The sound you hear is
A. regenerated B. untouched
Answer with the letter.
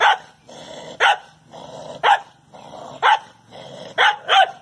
B